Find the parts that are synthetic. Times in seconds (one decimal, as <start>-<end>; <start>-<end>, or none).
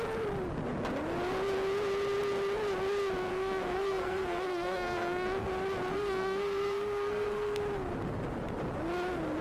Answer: 3.3-5.5; 5.9-7.6